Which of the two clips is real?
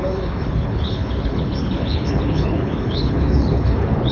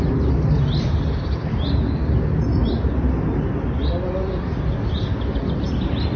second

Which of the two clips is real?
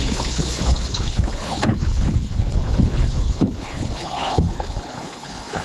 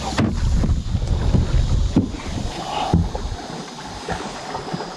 second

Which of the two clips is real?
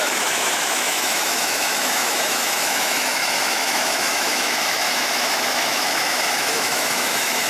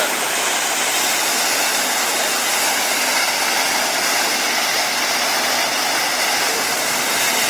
second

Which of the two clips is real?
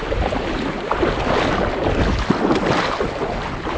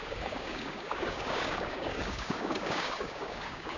first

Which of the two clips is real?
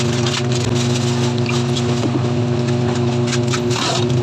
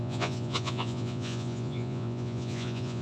first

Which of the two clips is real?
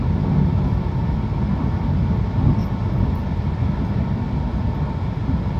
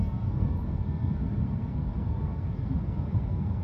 first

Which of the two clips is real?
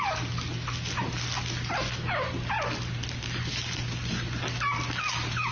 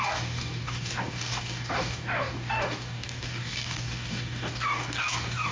first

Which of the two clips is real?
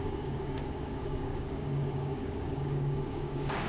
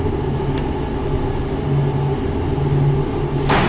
second